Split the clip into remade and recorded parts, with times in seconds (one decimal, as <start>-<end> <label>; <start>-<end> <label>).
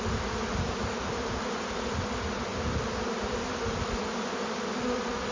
0.0-5.3 recorded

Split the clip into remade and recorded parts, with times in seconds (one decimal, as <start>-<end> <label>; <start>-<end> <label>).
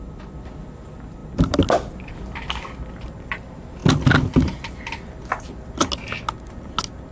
0.0-7.1 recorded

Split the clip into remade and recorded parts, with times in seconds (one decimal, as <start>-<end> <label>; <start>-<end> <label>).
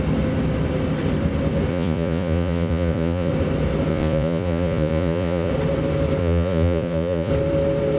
0.0-1.7 recorded; 1.7-3.3 remade; 3.3-3.9 recorded; 3.9-5.5 remade; 5.5-6.2 recorded; 6.2-7.3 remade; 7.3-8.0 recorded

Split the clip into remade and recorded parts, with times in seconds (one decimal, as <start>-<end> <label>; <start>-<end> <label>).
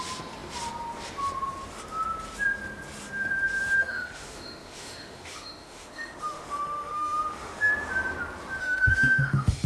0.0-3.8 recorded; 3.8-7.7 remade; 7.7-8.6 recorded; 8.6-9.7 remade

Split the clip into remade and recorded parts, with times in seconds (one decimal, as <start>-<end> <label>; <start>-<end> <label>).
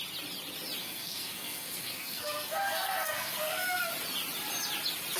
0.0-0.8 recorded; 0.8-3.9 remade; 3.9-5.2 recorded